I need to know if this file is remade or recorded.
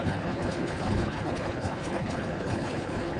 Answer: remade